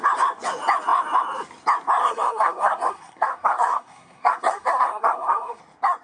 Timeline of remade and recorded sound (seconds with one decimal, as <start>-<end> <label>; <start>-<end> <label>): 0.0-2.0 recorded; 2.0-5.6 remade; 5.6-6.0 recorded